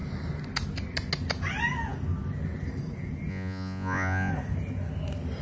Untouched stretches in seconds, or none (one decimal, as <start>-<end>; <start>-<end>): 0.0-3.3; 4.3-5.4